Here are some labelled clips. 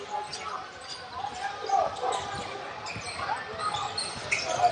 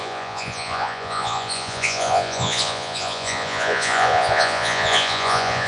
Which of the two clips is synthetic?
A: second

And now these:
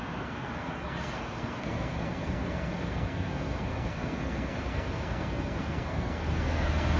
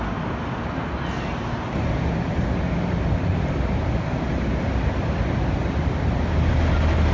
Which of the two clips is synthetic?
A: first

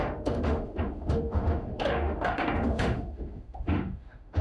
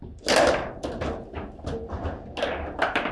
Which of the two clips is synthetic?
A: first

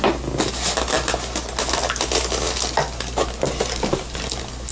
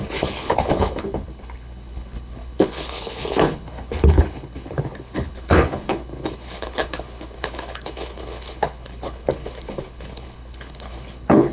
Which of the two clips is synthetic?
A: second